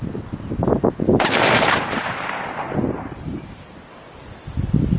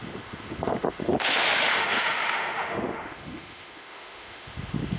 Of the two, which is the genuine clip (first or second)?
first